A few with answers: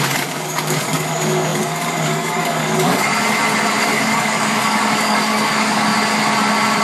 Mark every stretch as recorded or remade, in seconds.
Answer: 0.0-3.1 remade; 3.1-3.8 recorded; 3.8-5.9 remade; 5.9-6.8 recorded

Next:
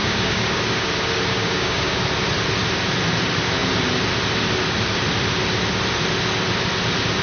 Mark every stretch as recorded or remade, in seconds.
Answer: 0.0-0.9 remade; 0.9-1.3 recorded; 1.3-2.0 remade; 2.0-7.2 recorded

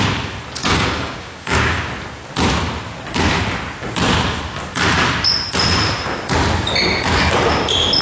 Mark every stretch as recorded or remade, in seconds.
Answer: 0.0-0.6 recorded; 0.6-1.9 remade; 1.9-8.0 recorded

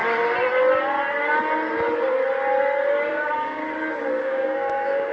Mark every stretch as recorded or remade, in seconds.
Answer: 0.0-3.1 recorded; 3.1-3.6 remade; 3.6-4.2 recorded; 4.2-5.1 remade

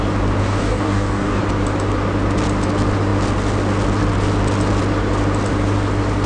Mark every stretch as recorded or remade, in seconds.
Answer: 0.0-0.4 recorded; 0.4-1.4 remade; 1.4-6.3 recorded

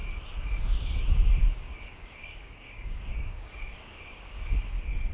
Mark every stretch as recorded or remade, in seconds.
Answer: 0.0-1.4 recorded; 1.4-4.5 remade; 4.5-5.1 recorded

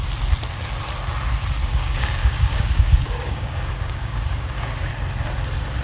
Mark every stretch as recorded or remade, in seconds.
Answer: 0.0-1.6 recorded; 1.6-4.9 remade; 4.9-5.8 recorded